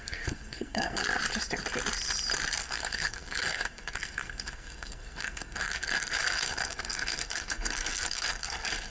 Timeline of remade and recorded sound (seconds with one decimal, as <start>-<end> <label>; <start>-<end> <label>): 0.0-1.0 remade; 1.0-2.6 recorded; 2.6-8.9 remade